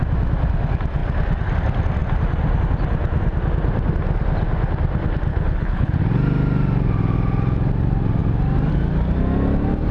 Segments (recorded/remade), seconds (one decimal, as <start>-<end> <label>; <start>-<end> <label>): 0.0-5.3 recorded; 5.3-5.9 remade; 5.9-9.9 recorded